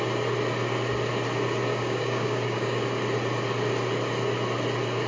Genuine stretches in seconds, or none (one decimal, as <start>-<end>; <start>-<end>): 0.0-1.7; 2.8-5.1